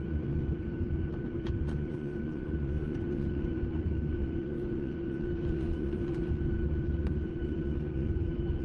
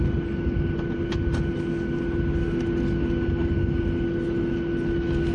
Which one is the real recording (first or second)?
second